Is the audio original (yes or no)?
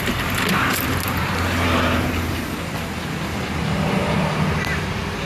yes